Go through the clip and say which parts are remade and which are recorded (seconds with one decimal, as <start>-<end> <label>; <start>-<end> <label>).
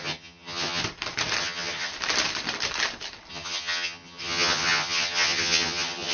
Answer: 0.0-0.8 remade; 0.8-1.4 recorded; 1.4-1.9 remade; 1.9-3.3 recorded; 3.3-6.1 remade